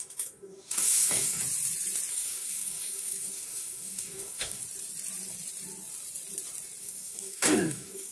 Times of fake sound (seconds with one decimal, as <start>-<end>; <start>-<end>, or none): 0.0-1.4; 2.1-4.6; 6.8-8.1